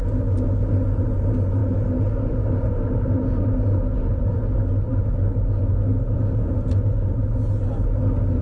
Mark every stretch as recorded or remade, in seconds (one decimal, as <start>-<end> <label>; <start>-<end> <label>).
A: 0.0-8.4 recorded